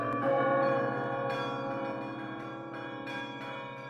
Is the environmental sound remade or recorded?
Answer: remade